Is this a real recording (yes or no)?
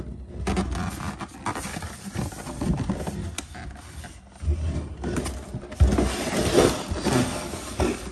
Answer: yes